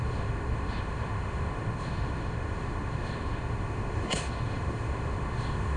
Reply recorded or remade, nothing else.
remade